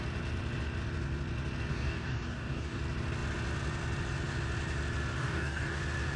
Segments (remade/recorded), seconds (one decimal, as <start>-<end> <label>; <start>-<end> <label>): 0.0-1.7 recorded; 1.7-2.8 remade; 2.8-5.2 recorded; 5.2-5.8 remade; 5.8-6.2 recorded